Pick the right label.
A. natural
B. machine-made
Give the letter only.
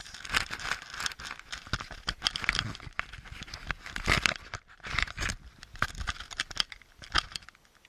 A